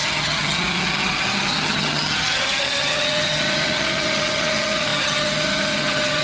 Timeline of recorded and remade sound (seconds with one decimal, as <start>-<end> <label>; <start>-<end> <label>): 0.0-6.2 remade